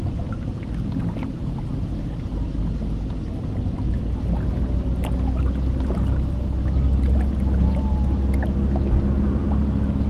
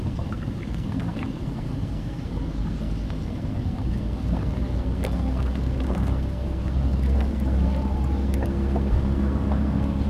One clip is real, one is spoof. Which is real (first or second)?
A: first